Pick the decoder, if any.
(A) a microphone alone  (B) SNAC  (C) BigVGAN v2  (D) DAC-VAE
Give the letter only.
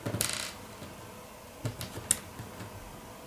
A